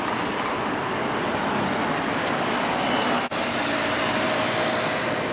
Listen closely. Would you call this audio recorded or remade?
remade